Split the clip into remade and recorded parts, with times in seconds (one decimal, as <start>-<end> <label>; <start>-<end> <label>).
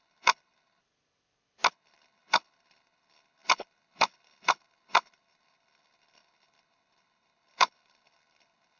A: 0.0-0.8 remade; 0.8-1.7 recorded; 1.7-8.8 remade